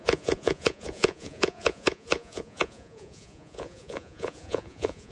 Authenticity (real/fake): fake